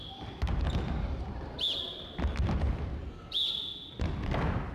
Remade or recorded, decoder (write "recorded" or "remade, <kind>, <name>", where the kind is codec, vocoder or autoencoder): recorded